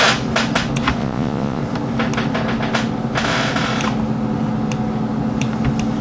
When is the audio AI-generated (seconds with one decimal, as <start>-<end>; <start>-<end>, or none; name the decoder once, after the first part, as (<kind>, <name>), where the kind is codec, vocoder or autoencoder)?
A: 1.0-1.6 (vocoder, Vocos)